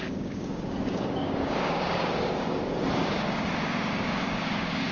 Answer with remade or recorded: remade